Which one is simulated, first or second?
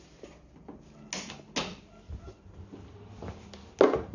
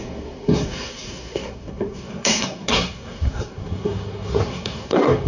second